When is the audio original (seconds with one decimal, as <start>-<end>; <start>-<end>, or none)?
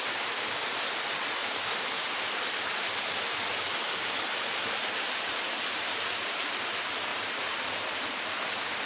0.0-1.4; 2.2-3.8; 6.6-7.1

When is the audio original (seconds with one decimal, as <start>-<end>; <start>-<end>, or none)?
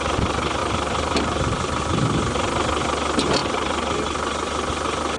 0.0-0.6; 1.8-5.2